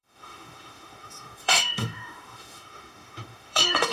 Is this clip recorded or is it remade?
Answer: remade